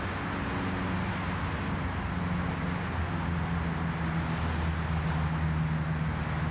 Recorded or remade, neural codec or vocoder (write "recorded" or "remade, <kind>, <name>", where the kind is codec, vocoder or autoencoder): recorded